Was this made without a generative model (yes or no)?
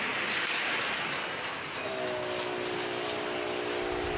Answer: yes